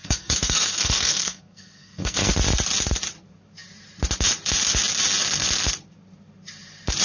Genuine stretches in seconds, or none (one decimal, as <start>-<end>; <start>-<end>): 2.3-7.0

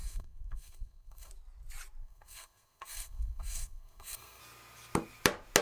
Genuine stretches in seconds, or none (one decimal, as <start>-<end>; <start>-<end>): 1.3-2.0; 4.4-5.6

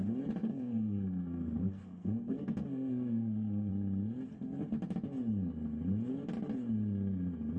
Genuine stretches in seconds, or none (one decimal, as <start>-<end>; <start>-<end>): 0.0-0.4; 3.7-7.6

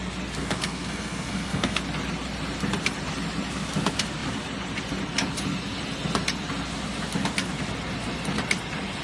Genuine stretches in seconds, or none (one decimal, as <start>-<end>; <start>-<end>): 0.0-0.4; 1.8-9.0